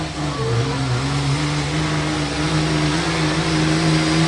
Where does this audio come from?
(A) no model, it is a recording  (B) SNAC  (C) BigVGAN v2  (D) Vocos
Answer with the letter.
A